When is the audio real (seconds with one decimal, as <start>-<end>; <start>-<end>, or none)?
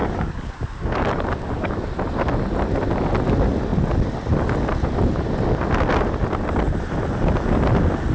1.9-8.1